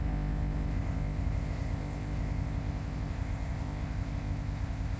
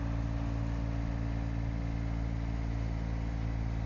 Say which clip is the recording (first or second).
second